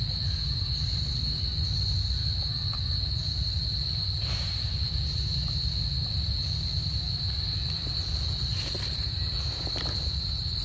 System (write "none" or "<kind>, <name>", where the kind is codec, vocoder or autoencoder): none